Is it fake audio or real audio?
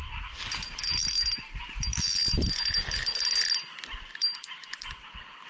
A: real